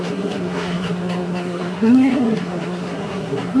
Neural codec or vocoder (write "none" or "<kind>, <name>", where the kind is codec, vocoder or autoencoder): codec, SNAC